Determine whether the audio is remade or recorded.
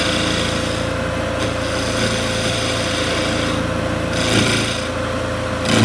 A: recorded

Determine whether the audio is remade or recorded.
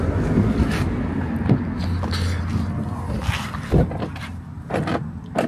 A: recorded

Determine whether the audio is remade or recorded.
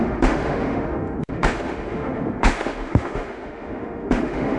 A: remade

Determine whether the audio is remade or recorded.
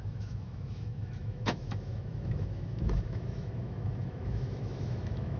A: remade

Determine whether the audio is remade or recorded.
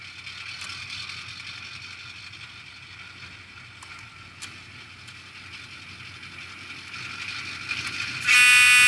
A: recorded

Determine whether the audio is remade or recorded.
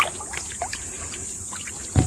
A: recorded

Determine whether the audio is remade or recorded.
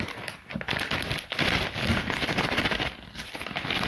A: recorded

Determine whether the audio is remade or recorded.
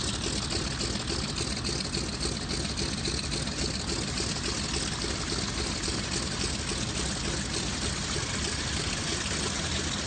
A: recorded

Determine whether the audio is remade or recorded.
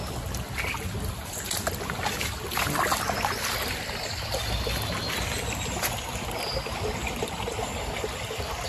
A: recorded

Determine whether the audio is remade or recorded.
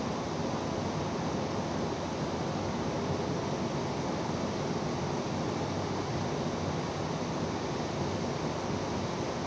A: recorded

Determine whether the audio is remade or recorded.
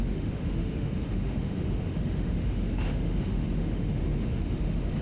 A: remade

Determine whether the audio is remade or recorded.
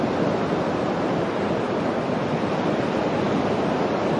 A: recorded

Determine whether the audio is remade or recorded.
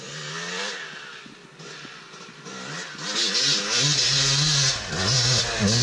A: recorded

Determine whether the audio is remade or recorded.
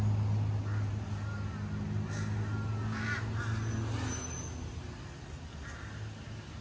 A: recorded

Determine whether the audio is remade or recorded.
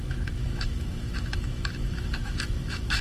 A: remade